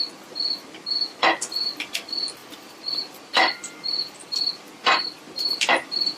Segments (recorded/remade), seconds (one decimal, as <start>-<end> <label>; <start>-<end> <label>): 0.0-2.4 recorded; 2.4-6.2 remade